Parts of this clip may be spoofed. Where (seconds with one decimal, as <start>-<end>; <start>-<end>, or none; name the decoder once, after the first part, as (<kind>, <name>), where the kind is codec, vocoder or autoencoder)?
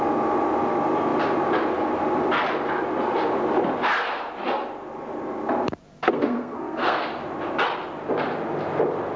6.0-7.1 (codec, SNAC)